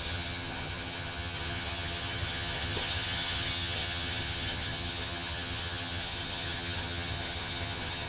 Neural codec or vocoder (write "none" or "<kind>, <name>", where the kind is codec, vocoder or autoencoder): vocoder, HiFi-GAN